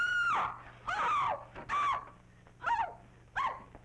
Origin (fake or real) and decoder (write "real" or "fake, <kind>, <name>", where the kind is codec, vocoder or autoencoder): real